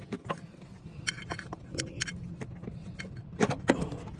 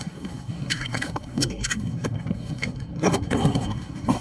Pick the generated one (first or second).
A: second